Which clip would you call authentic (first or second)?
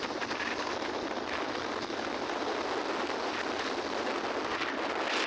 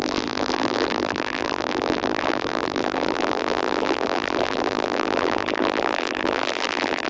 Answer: first